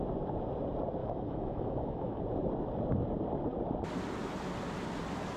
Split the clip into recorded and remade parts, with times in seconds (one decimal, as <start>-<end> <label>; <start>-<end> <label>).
0.0-1.0 recorded; 1.0-2.2 remade; 2.2-5.4 recorded